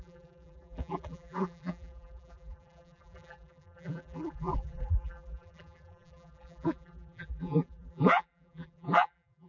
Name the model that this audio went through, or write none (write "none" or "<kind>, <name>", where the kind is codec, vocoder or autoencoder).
vocoder, BigVGAN v2